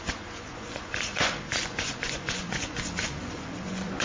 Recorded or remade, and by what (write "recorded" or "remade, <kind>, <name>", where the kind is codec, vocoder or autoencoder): remade, vocoder, Vocos